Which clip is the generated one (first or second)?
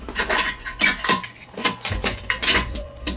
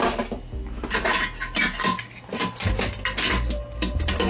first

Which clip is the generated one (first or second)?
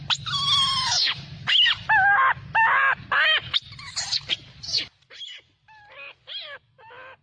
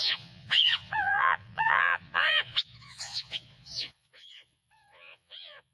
second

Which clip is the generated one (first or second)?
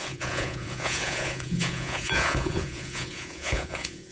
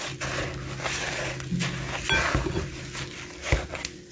first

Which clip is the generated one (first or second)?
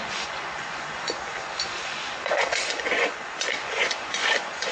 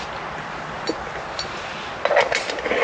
first